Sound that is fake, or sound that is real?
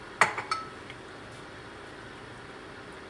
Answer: real